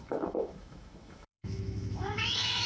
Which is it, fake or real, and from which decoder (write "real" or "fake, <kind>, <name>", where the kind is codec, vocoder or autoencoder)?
fake, autoencoder, DAC-VAE